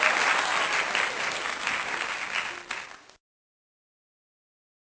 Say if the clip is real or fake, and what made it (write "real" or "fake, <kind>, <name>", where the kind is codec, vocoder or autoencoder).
real